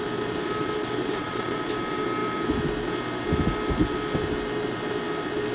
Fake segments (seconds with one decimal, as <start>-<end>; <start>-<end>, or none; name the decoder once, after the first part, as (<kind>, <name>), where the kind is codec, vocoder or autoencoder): 1.0-1.6 (vocoder, WaveNeXt)